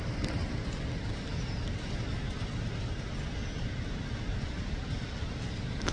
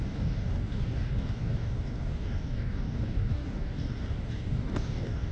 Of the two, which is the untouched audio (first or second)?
first